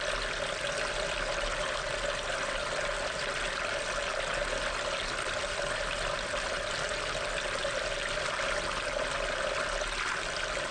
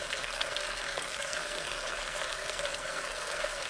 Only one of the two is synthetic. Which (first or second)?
second